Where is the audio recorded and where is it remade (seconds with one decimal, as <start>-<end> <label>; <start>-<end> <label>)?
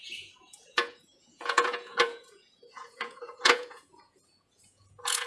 0.0-5.3 remade